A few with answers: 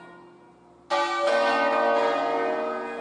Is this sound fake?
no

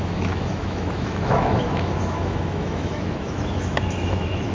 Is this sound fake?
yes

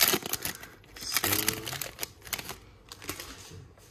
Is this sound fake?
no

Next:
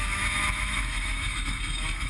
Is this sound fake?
yes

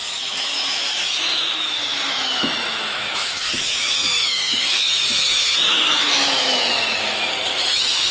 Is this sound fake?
yes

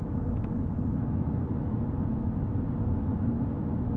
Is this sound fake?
yes